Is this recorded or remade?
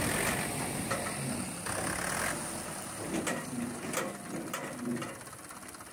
recorded